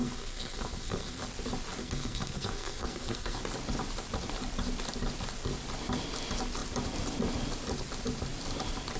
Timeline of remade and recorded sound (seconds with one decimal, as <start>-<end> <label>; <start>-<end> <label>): 0.0-1.2 remade; 1.2-1.8 recorded; 1.8-3.4 remade; 3.4-9.0 recorded